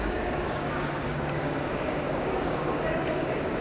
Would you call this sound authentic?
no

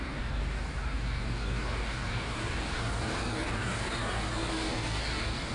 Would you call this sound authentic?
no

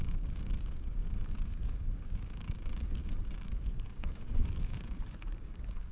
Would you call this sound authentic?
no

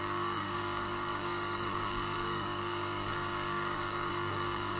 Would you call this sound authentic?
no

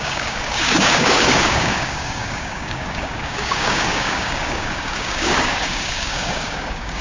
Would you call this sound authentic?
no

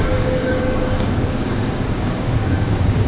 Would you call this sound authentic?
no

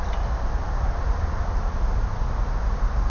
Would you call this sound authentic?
yes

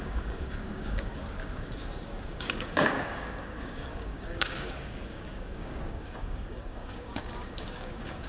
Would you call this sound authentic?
no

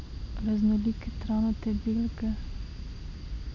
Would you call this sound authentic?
yes